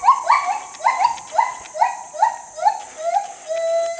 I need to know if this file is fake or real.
real